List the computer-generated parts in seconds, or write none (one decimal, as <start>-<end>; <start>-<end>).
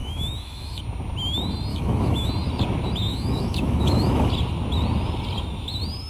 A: 0.0-0.8; 1.7-2.3; 3.1-4.3